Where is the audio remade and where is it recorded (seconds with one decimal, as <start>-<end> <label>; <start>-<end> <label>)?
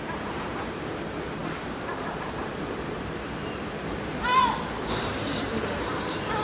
0.0-6.4 remade